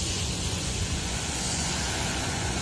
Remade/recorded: remade